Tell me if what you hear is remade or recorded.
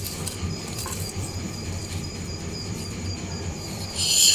remade